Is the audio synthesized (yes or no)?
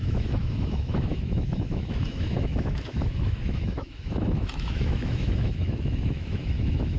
yes